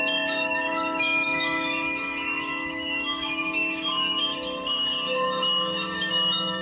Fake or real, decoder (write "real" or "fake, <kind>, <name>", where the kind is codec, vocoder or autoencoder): fake, autoencoder, DAC-VAE